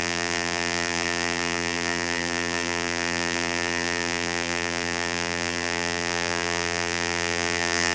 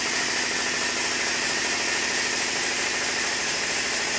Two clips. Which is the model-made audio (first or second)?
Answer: first